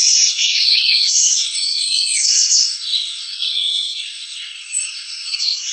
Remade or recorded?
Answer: remade